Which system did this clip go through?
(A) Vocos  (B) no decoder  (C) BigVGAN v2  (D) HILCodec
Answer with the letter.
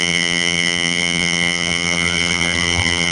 C